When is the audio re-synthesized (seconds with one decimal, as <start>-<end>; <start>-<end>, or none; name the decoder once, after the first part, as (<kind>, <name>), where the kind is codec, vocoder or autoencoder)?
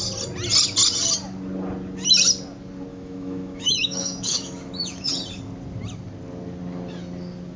2.9-5.1 (autoencoder, DAC-VAE)